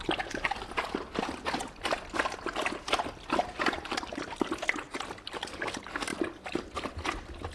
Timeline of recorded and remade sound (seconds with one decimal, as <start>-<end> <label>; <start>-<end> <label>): 0.0-6.1 recorded; 6.1-6.9 remade; 6.9-7.5 recorded